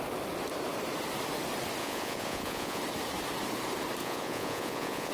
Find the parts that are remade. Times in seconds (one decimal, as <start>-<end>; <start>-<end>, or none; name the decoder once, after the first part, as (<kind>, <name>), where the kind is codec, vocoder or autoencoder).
1.8-2.8 (vocoder, Vocos); 4.0-5.1